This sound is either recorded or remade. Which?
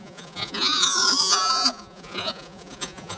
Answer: remade